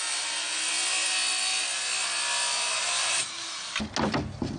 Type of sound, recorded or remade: recorded